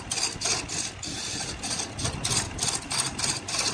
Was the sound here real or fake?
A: real